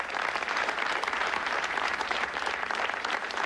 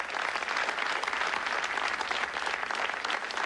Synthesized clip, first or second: first